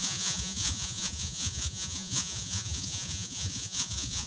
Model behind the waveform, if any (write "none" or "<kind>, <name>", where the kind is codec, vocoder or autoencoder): vocoder, Vocos